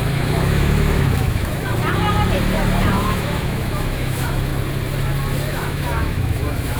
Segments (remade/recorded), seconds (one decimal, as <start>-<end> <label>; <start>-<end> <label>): 0.0-1.7 remade; 1.7-2.9 recorded; 2.9-4.5 remade; 4.5-5.5 recorded; 5.5-6.8 remade